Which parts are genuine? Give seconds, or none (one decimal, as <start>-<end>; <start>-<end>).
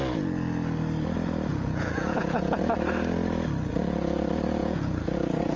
0.0-1.5; 2.6-4.6